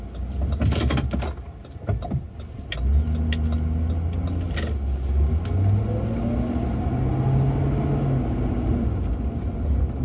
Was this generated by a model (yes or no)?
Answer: no